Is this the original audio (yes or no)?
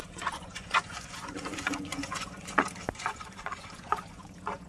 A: no